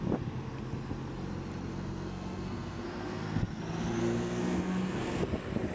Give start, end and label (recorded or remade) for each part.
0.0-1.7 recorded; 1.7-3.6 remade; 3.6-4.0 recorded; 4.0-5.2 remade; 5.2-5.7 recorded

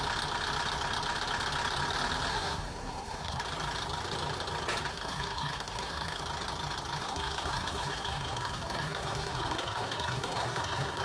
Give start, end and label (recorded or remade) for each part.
0.0-2.3 recorded; 2.3-3.4 remade; 3.4-4.9 recorded; 4.9-6.2 remade; 6.2-7.0 recorded; 7.0-11.0 remade